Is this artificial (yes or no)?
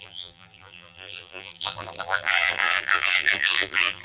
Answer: yes